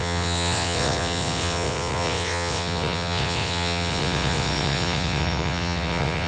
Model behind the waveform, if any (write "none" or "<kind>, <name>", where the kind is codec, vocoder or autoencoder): vocoder, WaveNeXt